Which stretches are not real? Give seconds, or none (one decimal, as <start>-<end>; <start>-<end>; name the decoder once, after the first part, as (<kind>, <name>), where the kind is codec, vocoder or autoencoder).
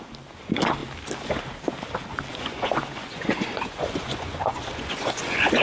2.3-5.6 (vocoder, Vocos)